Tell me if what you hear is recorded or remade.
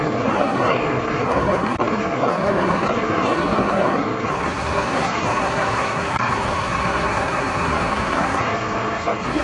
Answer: remade